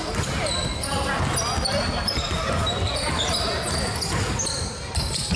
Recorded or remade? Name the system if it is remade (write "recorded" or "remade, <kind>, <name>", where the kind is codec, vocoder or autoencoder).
recorded